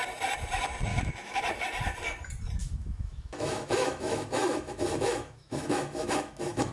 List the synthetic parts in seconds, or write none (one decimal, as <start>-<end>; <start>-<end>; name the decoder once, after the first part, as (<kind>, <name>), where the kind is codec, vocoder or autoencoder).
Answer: 0.9-1.4 (autoencoder, DAC-VAE); 2.6-6.7